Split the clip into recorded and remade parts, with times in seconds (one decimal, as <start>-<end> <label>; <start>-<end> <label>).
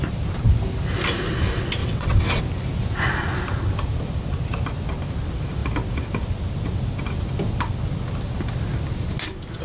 0.0-1.8 recorded; 1.8-2.4 remade; 2.4-9.6 recorded